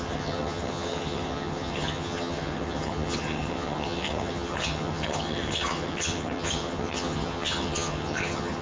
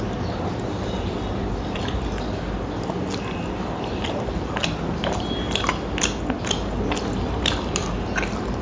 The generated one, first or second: first